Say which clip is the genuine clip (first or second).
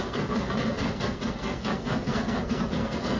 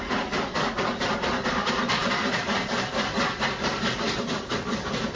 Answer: second